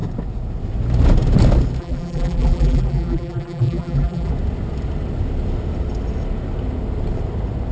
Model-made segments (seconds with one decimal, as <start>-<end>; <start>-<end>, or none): 1.8-4.3